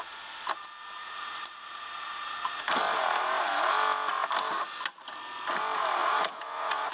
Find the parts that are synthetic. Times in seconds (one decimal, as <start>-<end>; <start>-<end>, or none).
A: 1.0-2.6; 6.0-6.9